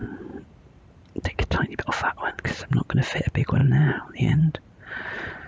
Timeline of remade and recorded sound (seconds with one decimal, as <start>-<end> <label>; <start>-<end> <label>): 0.0-1.8 remade; 1.8-3.6 recorded; 3.6-5.5 remade